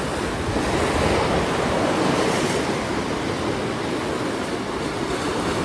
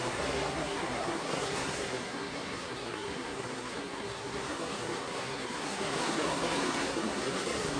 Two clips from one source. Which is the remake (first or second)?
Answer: second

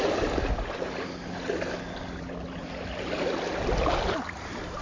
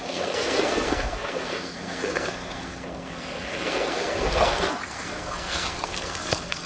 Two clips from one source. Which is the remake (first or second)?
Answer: second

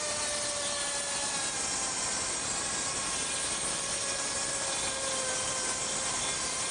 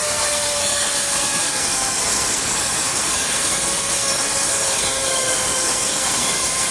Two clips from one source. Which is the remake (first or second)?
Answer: second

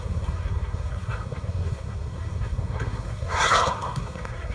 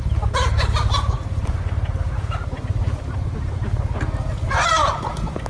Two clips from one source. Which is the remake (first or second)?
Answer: first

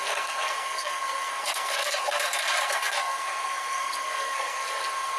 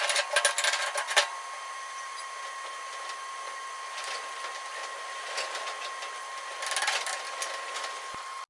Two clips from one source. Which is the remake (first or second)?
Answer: first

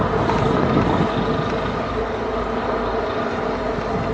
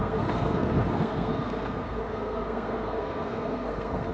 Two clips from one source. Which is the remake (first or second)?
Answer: second